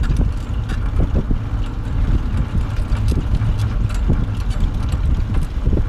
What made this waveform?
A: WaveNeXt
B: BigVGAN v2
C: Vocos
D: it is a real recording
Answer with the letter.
D